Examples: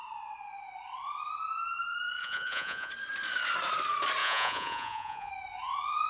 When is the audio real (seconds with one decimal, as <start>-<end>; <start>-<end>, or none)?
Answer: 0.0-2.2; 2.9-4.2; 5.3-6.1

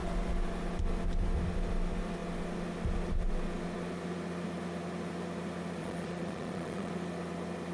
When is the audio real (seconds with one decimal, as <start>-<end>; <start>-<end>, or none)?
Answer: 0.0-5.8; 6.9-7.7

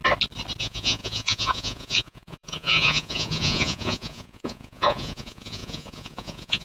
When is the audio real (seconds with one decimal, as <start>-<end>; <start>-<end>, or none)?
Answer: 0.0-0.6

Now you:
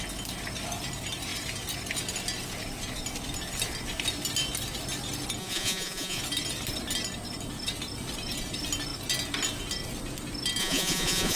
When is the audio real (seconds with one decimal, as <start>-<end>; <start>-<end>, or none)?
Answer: 0.0-5.4; 6.2-10.6

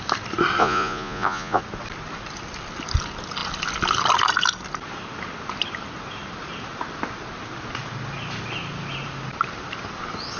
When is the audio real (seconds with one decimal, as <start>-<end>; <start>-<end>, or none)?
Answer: 0.0-0.6; 1.6-10.4